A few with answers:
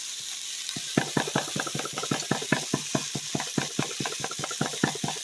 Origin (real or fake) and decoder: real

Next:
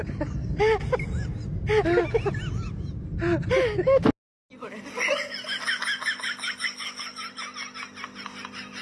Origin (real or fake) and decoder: real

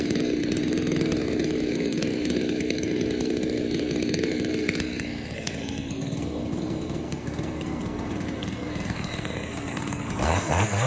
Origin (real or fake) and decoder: fake, codec, SNAC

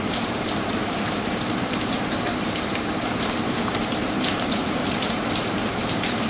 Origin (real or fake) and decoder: fake, vocoder, BigVGAN v2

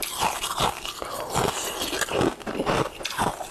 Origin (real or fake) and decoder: real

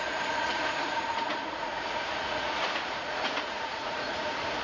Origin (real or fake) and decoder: fake, vocoder, Vocos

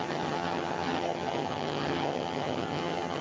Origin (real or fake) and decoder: fake, vocoder, HiFi-GAN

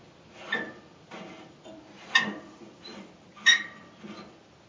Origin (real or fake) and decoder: real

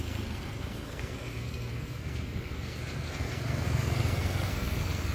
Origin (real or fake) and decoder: fake, codec, SNAC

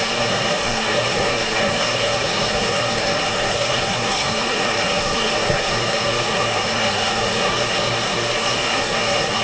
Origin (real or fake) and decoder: fake, codec, SNAC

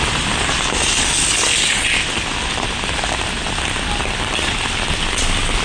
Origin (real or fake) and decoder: real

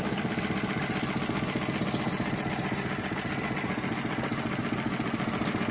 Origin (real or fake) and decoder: real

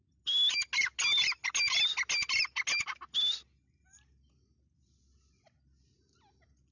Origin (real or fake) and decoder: real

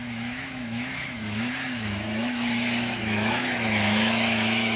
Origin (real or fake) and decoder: fake, autoencoder, DAC-VAE